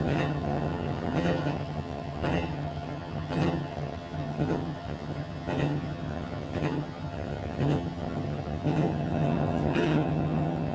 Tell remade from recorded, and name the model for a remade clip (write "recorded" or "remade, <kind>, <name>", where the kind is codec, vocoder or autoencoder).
remade, vocoder, HiFi-GAN